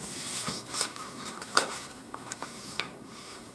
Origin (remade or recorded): remade